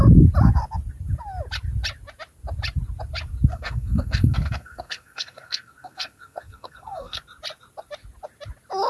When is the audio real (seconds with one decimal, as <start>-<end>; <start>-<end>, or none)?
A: 0.0-3.5; 7.2-8.9

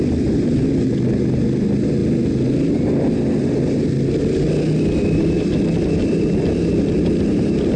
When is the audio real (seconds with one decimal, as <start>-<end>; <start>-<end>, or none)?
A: 0.0-7.8

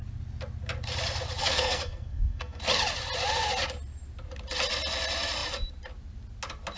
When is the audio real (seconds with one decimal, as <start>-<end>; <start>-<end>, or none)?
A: 0.0-1.4; 2.6-6.8

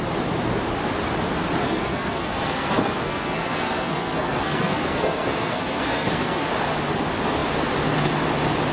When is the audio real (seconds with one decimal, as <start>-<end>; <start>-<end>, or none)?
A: 0.0-1.6; 6.5-8.7

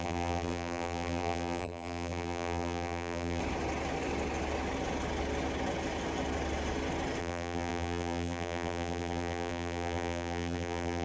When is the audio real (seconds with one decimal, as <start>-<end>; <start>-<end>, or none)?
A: 3.4-7.2

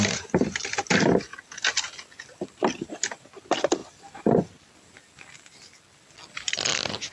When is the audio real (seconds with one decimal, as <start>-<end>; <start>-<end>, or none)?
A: 1.3-2.2; 3.8-7.1

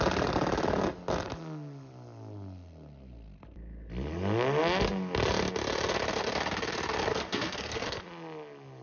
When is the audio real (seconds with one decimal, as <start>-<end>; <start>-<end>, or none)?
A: 0.0-7.1; 8.0-8.8